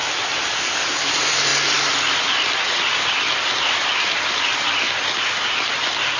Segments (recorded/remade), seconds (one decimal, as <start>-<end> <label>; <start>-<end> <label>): 0.0-6.2 recorded